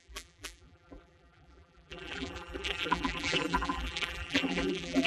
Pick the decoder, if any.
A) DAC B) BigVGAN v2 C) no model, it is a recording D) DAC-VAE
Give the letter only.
B